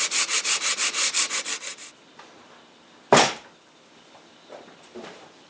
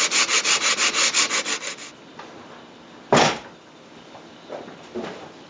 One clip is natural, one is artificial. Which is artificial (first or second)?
first